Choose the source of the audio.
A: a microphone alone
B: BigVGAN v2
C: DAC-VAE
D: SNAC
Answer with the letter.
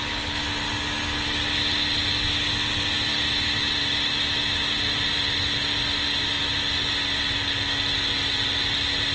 A